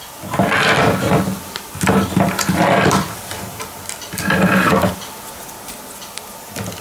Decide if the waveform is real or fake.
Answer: real